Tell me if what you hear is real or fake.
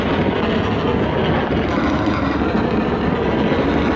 real